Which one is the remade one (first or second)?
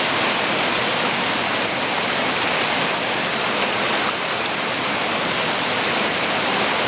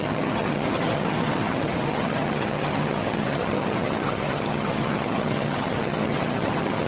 second